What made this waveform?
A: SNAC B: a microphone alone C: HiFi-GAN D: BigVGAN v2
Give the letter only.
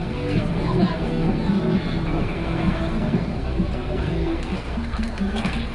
A